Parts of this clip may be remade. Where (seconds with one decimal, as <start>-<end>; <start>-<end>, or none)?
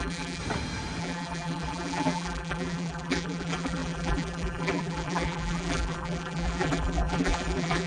0.0-0.4; 1.0-7.9